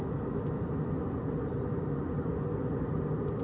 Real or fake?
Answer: real